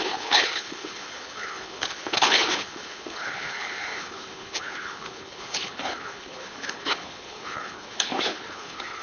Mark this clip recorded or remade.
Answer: remade